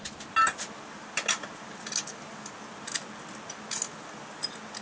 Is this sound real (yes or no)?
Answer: yes